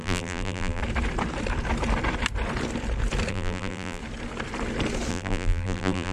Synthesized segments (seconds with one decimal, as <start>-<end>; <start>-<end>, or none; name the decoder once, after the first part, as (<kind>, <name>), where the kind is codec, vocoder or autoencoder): 0.0-0.8 (vocoder, BigVGAN v2); 3.3-4.0; 5.1-6.1